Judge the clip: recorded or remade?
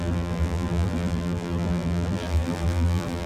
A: remade